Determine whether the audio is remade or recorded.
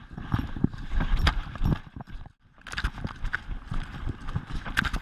recorded